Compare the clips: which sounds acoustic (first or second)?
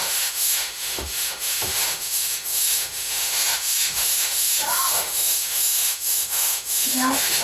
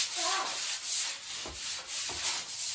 second